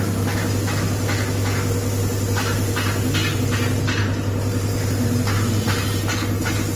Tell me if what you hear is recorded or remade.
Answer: recorded